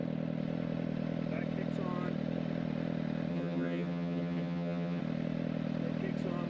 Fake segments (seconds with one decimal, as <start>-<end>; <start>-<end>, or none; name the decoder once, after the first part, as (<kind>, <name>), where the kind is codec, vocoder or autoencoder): 3.3-5.0 (vocoder, HiFi-GAN)